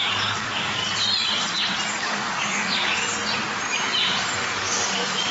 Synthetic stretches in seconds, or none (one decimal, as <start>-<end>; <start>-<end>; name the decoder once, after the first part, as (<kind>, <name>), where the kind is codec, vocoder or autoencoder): 0.0-0.8 (codec, DAC); 1.9-3.0; 4.6-5.3